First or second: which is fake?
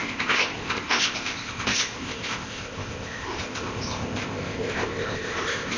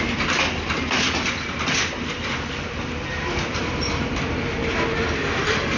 first